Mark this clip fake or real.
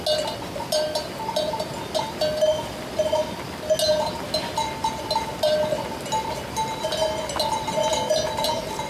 real